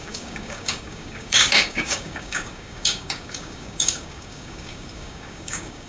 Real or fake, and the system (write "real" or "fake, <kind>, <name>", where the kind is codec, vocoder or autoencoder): fake, codec, DAC